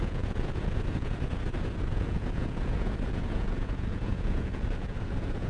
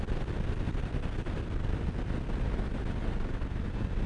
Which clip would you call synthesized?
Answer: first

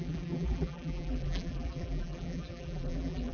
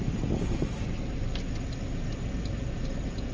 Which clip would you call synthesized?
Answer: first